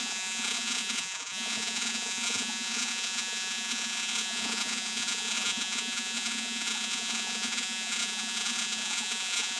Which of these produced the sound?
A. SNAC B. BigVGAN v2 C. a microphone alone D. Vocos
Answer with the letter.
D